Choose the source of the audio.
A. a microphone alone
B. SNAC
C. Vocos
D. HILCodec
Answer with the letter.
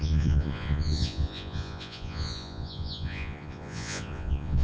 C